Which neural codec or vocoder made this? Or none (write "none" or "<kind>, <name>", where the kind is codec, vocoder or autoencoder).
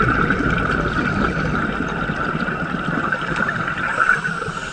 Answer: none